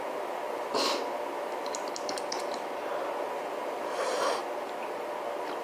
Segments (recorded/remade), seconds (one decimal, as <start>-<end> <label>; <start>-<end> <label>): 0.0-5.6 recorded